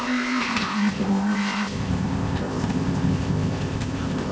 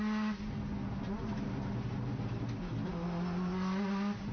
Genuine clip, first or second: second